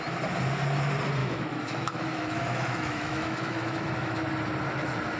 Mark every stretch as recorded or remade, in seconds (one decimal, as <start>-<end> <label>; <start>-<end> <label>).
0.0-1.2 recorded; 1.2-4.3 remade; 4.3-5.2 recorded